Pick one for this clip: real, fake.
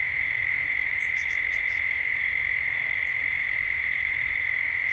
fake